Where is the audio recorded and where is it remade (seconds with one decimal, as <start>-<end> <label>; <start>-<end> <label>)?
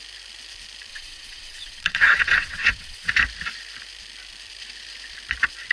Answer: 0.0-0.9 recorded; 0.9-3.1 remade; 3.1-5.7 recorded